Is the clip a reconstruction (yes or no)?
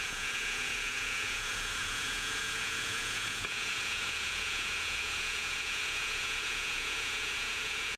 yes